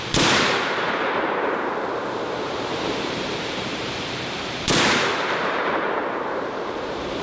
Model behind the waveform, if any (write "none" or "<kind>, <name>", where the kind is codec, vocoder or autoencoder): vocoder, BigVGAN v2